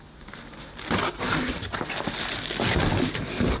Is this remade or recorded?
recorded